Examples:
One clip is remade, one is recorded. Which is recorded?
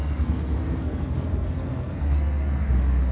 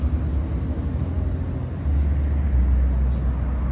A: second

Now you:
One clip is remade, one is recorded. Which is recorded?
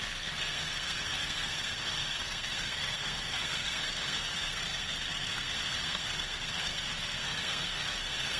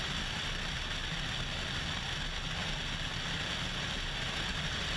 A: second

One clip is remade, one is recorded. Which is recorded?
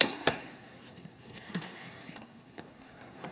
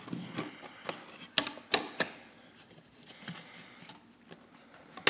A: second